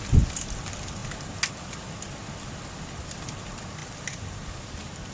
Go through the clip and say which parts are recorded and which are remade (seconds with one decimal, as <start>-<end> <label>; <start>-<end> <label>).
0.0-3.8 recorded; 3.8-4.5 remade; 4.5-5.1 recorded